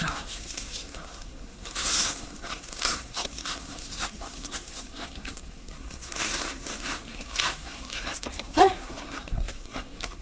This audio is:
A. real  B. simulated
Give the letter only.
B